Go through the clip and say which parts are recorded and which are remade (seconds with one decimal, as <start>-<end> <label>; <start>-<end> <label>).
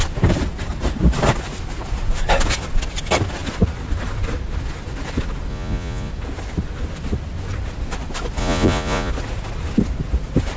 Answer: 0.0-5.5 recorded; 5.5-6.1 remade; 6.1-8.4 recorded; 8.4-9.1 remade; 9.1-10.6 recorded